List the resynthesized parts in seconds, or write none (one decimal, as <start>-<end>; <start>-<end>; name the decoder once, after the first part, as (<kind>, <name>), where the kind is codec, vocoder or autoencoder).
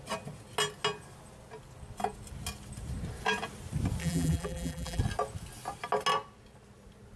4.0-5.0 (vocoder, BigVGAN v2)